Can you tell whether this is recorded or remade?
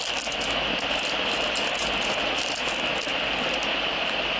recorded